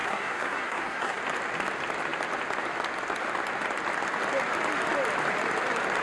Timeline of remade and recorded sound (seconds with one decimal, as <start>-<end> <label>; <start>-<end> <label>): 0.0-1.2 remade; 1.2-6.0 recorded

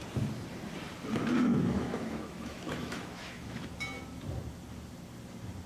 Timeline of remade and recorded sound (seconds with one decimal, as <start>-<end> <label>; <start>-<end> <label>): 0.0-1.5 recorded; 1.5-3.7 remade; 3.7-5.7 recorded

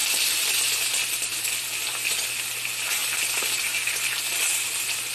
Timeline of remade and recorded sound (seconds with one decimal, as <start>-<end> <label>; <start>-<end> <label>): 0.0-0.7 remade; 0.7-5.1 recorded

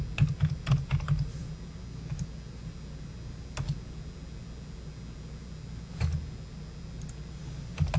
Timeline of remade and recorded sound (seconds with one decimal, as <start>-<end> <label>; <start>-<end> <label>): 0.0-8.0 recorded

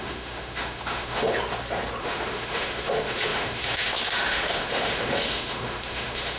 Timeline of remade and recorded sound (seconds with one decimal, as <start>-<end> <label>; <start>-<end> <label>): 0.0-1.3 remade; 1.3-2.0 recorded; 2.0-6.4 remade